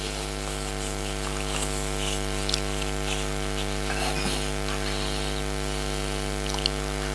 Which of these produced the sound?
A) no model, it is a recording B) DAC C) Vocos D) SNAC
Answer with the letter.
A